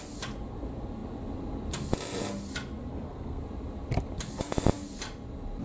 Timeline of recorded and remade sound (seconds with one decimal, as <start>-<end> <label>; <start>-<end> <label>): 0.0-2.9 recorded; 2.9-3.4 remade; 3.4-5.6 recorded